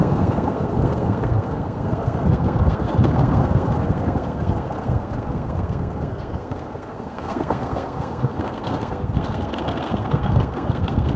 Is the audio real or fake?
fake